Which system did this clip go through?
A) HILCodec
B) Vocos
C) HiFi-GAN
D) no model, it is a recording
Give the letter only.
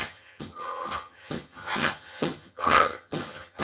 C